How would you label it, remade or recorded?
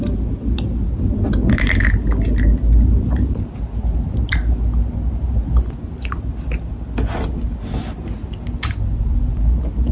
recorded